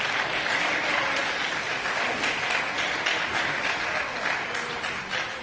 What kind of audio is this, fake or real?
real